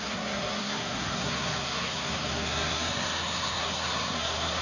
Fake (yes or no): yes